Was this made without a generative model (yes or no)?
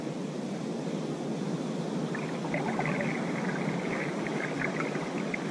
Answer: yes